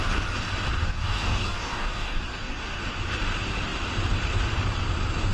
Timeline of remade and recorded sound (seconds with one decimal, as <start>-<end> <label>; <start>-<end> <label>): 0.0-0.8 recorded; 0.8-2.8 remade; 2.8-5.3 recorded